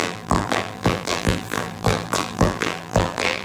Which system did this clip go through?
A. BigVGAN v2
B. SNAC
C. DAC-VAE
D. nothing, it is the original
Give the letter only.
A